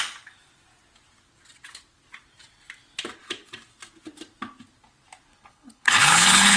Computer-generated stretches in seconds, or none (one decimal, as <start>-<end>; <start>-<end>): 5.3-6.6